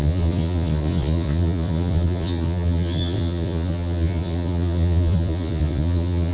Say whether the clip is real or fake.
fake